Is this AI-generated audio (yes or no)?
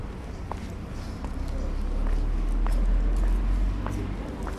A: no